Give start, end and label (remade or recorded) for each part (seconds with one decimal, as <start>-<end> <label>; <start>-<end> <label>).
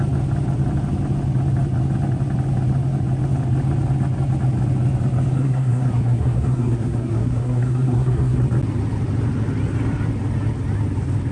0.0-5.3 recorded; 5.3-8.4 remade; 8.4-11.3 recorded